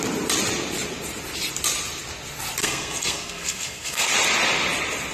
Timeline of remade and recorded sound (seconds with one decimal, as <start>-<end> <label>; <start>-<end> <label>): 0.0-2.6 recorded; 2.6-4.1 remade; 4.1-5.1 recorded